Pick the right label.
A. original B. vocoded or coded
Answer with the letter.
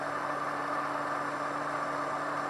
A